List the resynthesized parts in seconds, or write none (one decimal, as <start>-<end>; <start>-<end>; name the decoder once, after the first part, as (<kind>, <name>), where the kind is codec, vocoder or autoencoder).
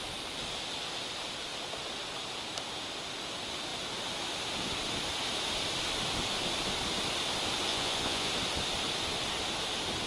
7.7-8.3 (vocoder, Vocos)